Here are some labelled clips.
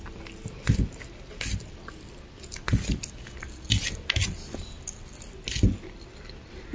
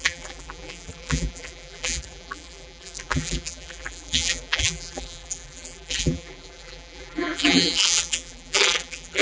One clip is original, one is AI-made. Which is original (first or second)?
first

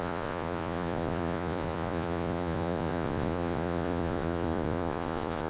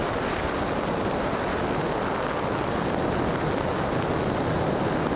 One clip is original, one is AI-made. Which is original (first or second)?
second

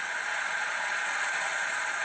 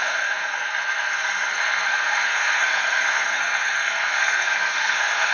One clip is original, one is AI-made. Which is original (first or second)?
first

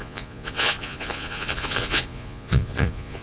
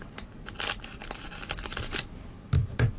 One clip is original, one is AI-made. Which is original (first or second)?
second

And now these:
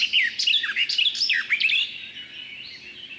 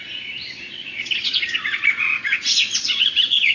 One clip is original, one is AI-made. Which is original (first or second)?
first